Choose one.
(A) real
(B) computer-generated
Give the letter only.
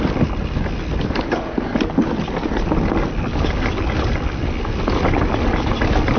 A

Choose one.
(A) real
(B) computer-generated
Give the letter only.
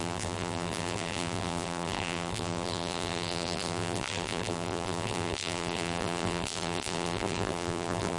B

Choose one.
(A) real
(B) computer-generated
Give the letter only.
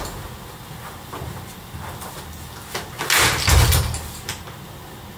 A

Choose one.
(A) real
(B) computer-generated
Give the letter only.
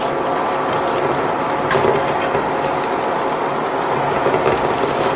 B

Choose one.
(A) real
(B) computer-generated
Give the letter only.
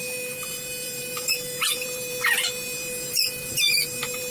B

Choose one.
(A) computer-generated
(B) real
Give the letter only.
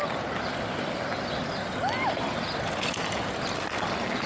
B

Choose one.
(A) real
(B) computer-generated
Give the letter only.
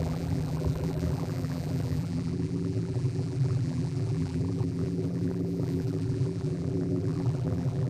B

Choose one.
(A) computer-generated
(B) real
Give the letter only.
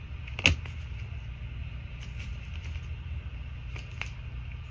B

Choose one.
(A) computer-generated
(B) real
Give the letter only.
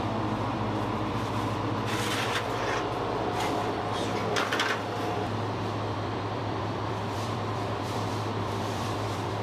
A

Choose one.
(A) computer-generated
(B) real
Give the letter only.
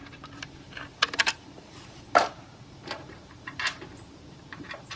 A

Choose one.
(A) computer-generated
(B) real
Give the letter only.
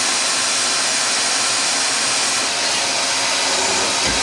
B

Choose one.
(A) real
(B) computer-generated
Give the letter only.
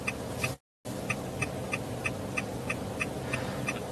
A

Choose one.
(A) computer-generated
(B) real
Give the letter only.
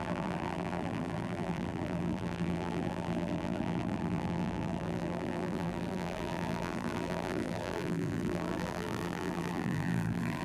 A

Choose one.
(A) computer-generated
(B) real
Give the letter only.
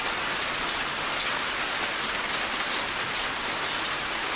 B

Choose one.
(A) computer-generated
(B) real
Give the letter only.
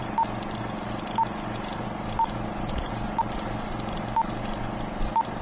B